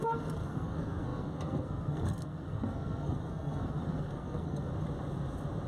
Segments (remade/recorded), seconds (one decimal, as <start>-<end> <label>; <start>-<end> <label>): 0.0-4.7 remade; 4.7-5.7 recorded